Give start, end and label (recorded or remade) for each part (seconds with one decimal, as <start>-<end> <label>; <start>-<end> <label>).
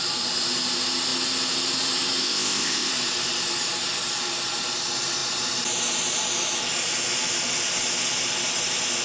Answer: 0.0-2.2 recorded; 2.2-2.9 remade; 2.9-9.0 recorded